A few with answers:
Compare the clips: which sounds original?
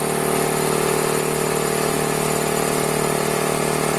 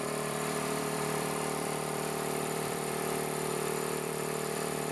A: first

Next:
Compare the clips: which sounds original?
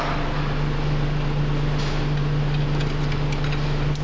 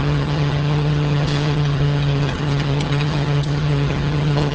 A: first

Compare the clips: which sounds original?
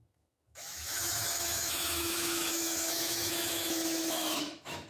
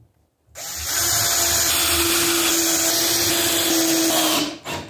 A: second